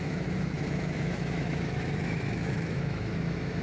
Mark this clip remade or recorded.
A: remade